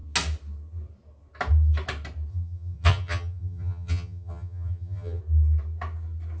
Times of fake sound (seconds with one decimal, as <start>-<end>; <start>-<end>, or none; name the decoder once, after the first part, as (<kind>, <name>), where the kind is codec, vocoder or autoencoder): 2.3-5.2 (vocoder, HiFi-GAN)